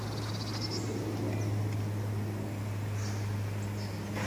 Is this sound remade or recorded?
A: remade